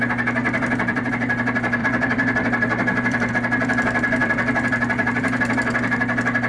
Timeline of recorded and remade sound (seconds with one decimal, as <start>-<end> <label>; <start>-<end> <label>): 0.0-0.4 recorded; 0.4-1.1 remade; 1.1-1.8 recorded; 1.8-3.3 remade; 3.3-4.2 recorded; 4.2-5.5 remade; 5.5-6.5 recorded